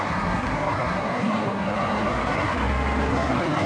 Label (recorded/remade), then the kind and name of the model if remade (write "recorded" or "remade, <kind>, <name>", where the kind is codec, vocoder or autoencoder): remade, codec, SNAC